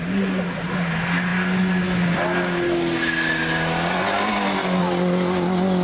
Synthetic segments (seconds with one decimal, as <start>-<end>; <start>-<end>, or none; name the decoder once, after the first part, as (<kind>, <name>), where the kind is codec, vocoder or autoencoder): none